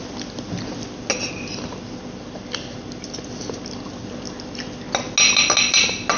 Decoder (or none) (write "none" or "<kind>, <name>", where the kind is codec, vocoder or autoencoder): none